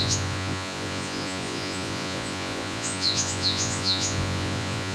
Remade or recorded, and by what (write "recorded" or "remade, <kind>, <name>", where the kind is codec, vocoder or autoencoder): remade, vocoder, Vocos